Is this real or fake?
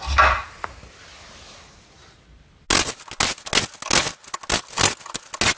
real